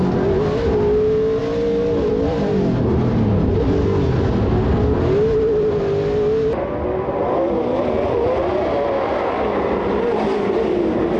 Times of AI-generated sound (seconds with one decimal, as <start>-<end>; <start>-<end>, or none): none